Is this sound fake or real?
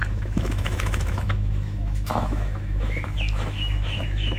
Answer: fake